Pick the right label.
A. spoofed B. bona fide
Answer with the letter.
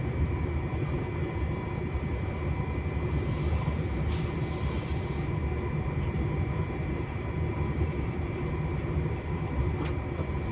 A